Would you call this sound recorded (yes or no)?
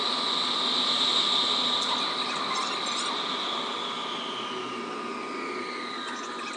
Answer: yes